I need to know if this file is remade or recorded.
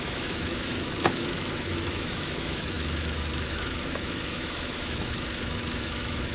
remade